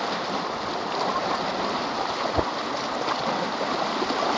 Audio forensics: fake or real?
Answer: real